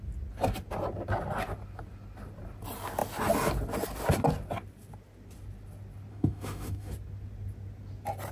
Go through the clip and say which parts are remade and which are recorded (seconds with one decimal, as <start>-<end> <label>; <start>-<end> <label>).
0.0-6.1 recorded; 6.1-6.9 remade; 6.9-8.3 recorded